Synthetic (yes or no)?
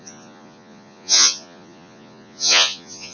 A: yes